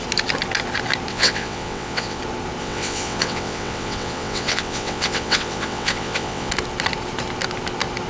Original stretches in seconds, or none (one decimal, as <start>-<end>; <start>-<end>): 0.0-1.1; 2.2-2.6; 6.5-8.1